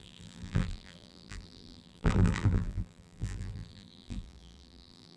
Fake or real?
fake